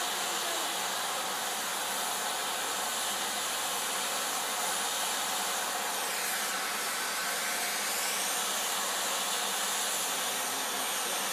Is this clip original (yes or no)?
yes